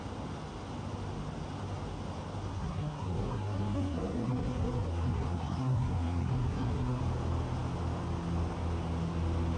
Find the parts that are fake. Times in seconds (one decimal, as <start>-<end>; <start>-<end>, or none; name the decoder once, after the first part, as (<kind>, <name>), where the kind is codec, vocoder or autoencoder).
2.5-7.0 (codec, SNAC)